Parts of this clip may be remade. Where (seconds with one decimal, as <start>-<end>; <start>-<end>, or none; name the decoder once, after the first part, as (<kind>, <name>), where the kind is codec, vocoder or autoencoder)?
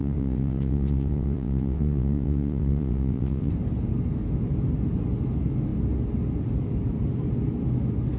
0.0-3.5 (vocoder, WaveNeXt)